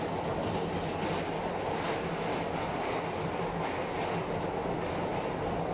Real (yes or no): yes